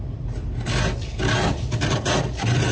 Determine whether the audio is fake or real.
real